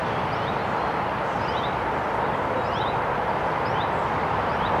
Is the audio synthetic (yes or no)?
no